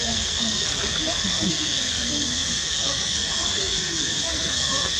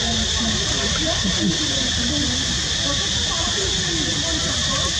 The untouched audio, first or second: second